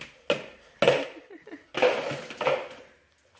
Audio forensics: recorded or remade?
recorded